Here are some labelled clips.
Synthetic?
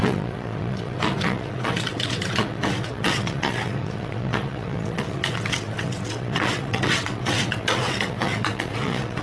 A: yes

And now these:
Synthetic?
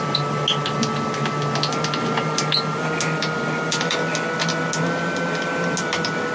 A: no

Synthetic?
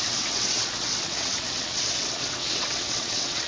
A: yes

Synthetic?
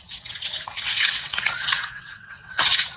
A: yes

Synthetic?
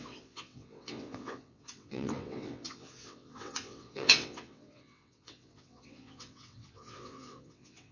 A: yes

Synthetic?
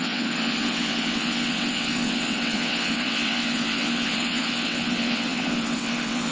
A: yes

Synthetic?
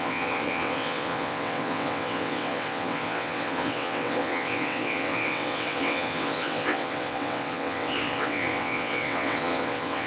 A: yes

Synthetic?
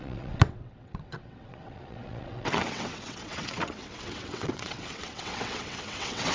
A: yes